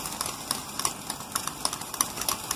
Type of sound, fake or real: fake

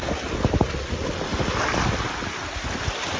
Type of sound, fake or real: real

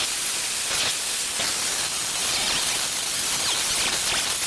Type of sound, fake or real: real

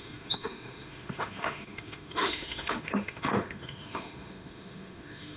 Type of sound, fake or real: fake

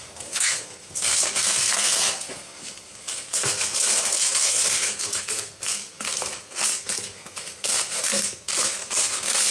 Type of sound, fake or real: fake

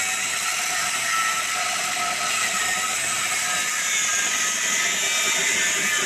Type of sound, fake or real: real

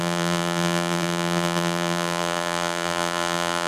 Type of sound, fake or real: fake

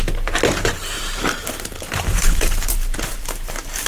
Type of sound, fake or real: fake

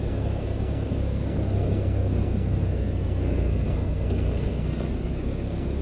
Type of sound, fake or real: fake